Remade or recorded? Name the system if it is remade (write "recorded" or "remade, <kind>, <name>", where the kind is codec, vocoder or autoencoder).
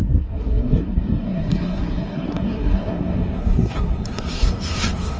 remade, codec, SNAC